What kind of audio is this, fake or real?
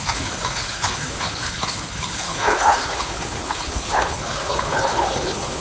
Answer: fake